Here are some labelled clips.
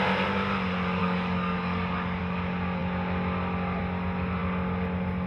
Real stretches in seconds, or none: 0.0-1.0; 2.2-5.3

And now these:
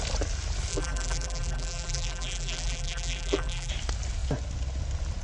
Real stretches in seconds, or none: 0.0-0.7; 3.7-5.2

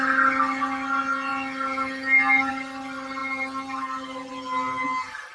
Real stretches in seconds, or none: 0.0-5.3